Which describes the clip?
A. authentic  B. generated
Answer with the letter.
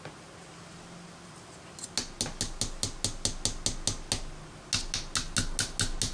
A